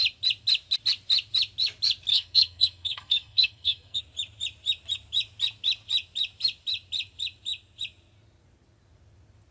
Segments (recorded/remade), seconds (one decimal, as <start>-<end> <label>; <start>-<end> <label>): 0.0-2.1 recorded; 2.1-4.0 remade; 4.0-9.5 recorded